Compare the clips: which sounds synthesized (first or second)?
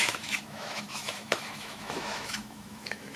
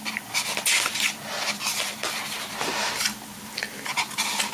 first